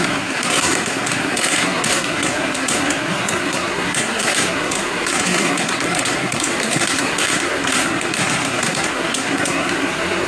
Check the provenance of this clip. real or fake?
fake